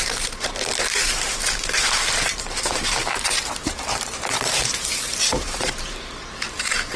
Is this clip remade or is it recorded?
remade